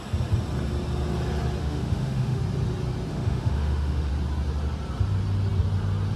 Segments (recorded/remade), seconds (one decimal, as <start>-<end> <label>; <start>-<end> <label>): 0.0-1.6 recorded; 1.6-2.4 remade; 2.4-3.1 recorded; 3.1-4.1 remade; 4.1-6.2 recorded